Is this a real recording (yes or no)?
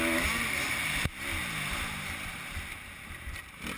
yes